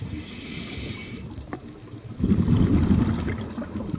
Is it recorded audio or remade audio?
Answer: recorded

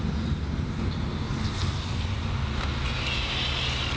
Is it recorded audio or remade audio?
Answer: recorded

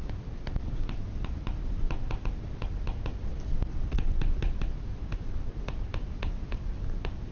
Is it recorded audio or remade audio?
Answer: recorded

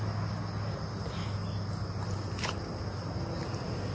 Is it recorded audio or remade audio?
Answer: recorded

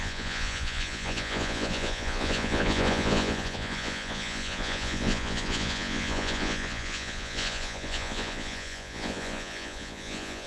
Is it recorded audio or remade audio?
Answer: remade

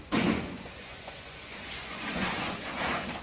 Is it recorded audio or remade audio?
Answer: remade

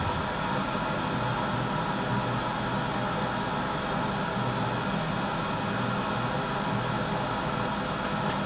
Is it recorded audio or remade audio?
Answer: recorded